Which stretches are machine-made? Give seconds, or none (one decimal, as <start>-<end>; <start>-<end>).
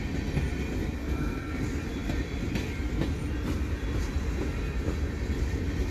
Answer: 1.0-1.6